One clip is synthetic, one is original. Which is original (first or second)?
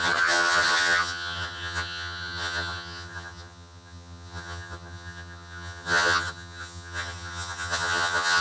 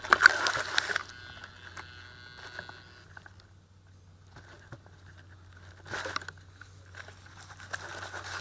second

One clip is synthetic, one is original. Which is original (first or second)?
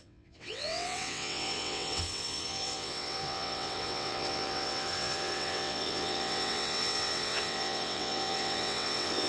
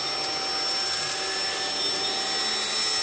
second